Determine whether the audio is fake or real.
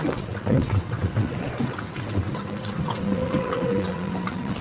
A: fake